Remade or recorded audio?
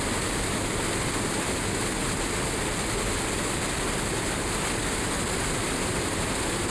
recorded